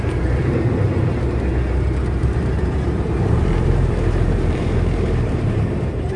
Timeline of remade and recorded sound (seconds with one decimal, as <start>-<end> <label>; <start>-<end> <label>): 0.0-2.2 recorded; 2.2-6.2 remade